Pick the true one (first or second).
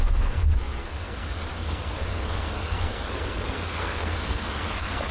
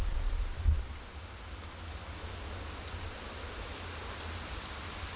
second